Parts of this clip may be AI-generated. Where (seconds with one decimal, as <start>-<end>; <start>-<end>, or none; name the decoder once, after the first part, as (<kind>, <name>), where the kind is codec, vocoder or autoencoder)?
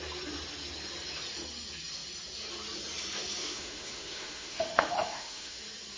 3.4-5.6 (autoencoder, DAC-VAE)